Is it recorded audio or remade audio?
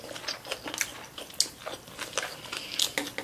recorded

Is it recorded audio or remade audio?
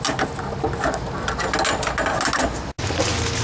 recorded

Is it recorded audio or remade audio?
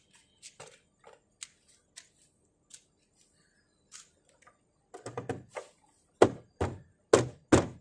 recorded